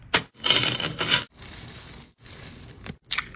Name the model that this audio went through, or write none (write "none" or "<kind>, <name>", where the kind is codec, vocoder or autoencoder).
none